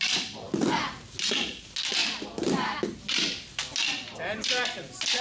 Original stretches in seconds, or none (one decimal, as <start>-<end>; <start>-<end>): 0.0-5.2